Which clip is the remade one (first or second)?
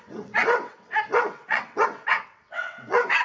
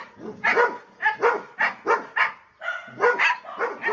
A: first